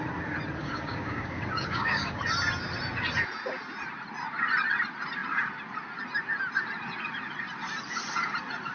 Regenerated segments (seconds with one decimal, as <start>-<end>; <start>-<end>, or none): 0.6-2.2